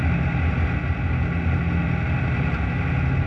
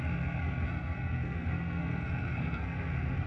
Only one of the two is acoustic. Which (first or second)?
first